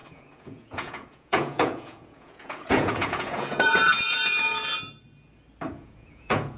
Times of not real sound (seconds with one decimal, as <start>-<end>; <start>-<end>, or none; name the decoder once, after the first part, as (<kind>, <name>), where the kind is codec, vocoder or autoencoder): 0.0-4.6 (vocoder, Vocos); 5.7-6.6